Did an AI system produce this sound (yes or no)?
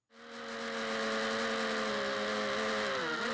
no